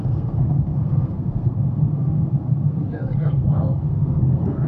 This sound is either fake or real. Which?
fake